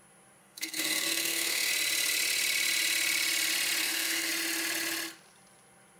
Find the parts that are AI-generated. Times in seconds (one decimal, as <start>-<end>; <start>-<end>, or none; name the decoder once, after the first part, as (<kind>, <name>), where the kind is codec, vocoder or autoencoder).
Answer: 0.4-1.7 (codec, SNAC); 3.8-4.3